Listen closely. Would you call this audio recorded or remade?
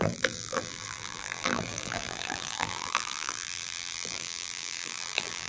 remade